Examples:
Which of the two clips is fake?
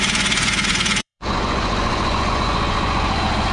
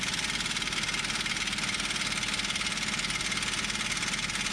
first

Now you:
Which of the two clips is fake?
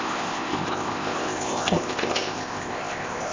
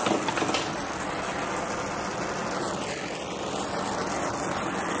first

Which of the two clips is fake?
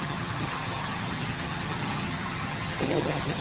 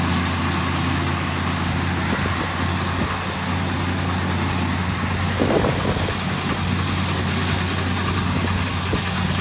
first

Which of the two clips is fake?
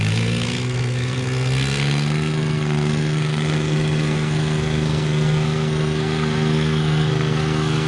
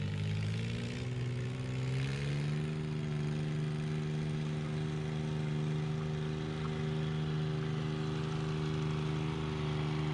first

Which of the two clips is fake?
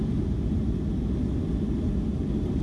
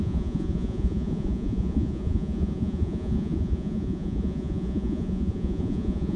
second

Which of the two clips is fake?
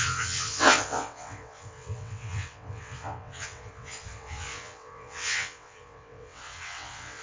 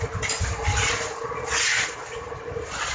first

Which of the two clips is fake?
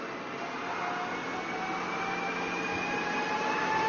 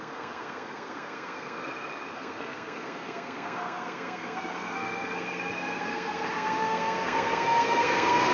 second